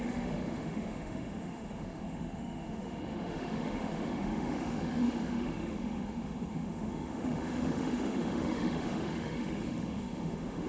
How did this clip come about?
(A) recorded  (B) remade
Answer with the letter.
B